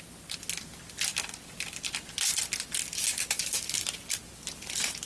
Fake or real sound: real